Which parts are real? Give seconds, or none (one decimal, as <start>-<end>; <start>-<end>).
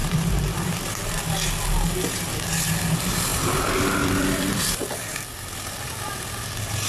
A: 1.0-3.3; 4.6-6.9